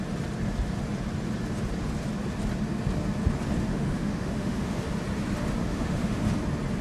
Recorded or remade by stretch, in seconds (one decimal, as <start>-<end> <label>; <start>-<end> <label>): 0.0-3.7 recorded; 3.7-4.8 remade; 4.8-5.6 recorded; 5.6-6.3 remade; 6.3-6.8 recorded